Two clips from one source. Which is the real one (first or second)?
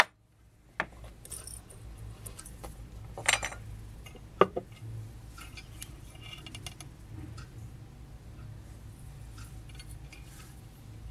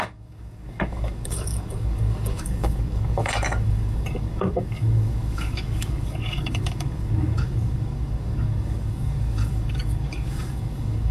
first